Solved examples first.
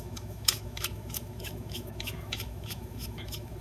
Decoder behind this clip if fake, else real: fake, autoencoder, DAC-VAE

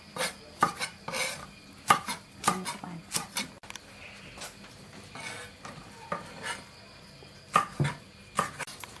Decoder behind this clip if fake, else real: real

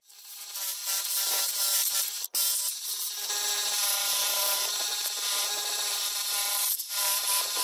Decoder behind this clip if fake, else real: fake, vocoder, BigVGAN v2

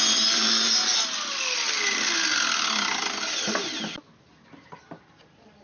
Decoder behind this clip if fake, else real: real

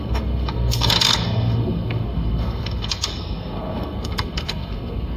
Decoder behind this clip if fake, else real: fake, codec, SNAC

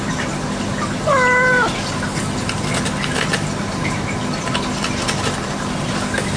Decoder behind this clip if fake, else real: real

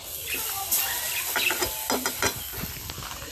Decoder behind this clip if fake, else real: real